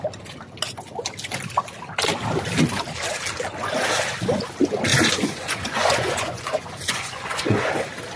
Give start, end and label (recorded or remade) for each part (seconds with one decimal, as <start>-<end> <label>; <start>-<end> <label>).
0.0-4.9 recorded; 4.9-7.7 remade; 7.7-8.2 recorded